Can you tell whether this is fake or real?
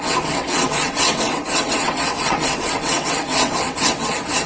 fake